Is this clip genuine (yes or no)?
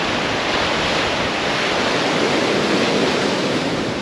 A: yes